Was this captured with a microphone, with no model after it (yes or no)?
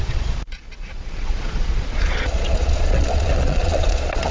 no